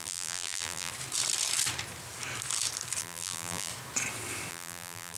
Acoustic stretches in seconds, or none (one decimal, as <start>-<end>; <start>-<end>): 0.9-3.0; 3.7-4.5